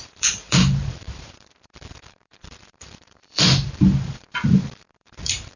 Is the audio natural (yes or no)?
no